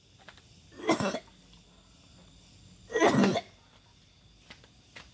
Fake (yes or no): no